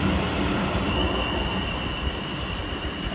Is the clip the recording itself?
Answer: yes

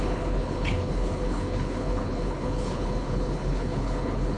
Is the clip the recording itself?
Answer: no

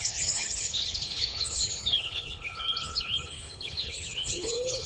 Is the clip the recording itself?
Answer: no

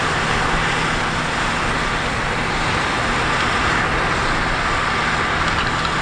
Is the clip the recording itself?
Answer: yes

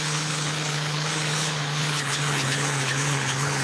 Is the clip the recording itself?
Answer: no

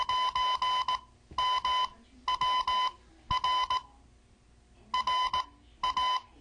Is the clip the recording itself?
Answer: yes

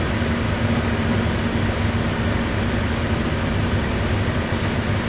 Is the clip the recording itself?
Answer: yes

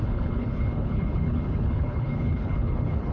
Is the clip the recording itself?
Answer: no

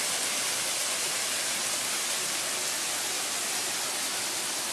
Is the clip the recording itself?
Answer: yes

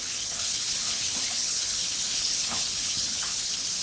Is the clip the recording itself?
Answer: no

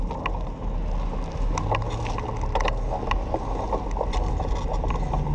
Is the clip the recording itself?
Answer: yes